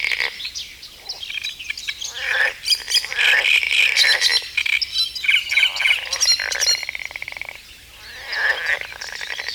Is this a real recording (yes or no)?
yes